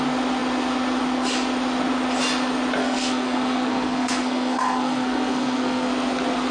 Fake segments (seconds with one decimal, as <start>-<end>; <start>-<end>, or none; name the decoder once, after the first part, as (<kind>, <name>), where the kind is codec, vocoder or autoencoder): 2.8-5.9 (codec, SNAC)